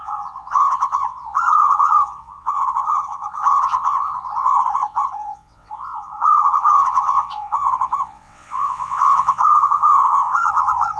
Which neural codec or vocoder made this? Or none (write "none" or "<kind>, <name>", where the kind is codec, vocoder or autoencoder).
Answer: vocoder, WaveNeXt